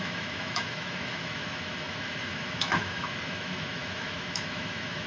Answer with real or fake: fake